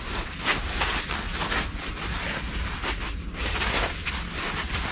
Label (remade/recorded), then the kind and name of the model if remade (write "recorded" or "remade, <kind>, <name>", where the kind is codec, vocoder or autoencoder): recorded